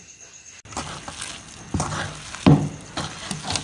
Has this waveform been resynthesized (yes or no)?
no